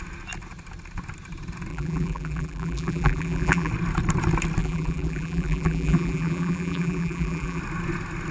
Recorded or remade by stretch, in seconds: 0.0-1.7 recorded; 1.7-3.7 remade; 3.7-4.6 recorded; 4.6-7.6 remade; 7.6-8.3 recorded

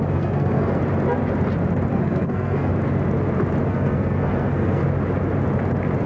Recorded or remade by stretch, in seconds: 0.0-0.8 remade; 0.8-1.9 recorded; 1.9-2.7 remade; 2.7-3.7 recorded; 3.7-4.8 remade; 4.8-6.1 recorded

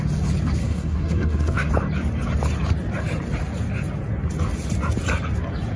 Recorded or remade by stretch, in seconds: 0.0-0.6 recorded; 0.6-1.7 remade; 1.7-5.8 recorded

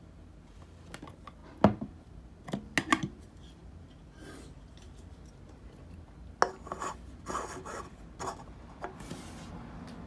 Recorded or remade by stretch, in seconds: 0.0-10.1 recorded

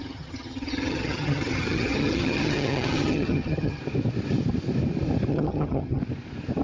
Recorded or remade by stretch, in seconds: 0.0-3.8 remade; 3.8-5.3 recorded; 5.3-6.0 remade; 6.0-6.6 recorded

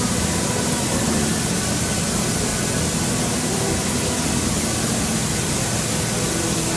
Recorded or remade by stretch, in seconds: 0.0-6.8 recorded

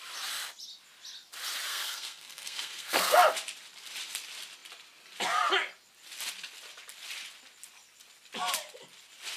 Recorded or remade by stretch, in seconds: 0.0-1.7 recorded; 1.7-3.2 remade; 3.2-9.4 recorded